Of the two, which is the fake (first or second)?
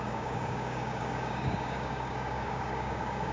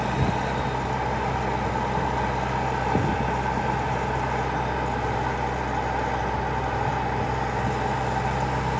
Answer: first